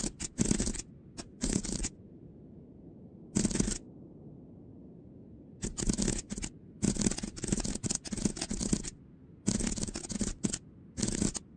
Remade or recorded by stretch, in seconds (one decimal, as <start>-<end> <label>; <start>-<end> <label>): 0.0-1.3 recorded; 1.3-2.1 remade; 2.1-11.6 recorded